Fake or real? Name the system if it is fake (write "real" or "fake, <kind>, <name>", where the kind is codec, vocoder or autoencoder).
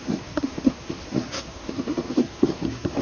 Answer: fake, codec, SNAC